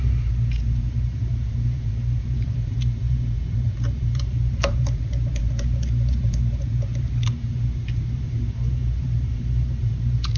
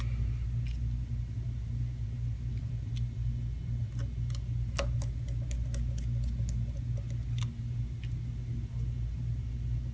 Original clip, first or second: second